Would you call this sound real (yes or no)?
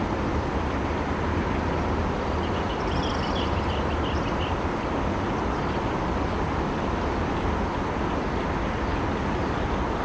yes